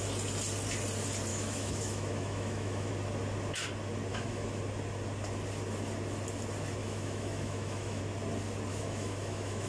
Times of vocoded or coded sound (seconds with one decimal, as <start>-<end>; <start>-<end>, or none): 1.3-2.9; 4.1-4.6; 6.8-8.0; 8.7-9.7

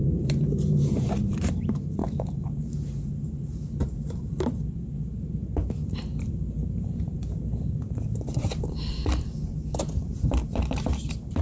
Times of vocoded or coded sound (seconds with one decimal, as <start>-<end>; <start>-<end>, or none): 0.0-9.0; 9.8-11.4